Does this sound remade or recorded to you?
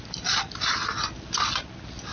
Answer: recorded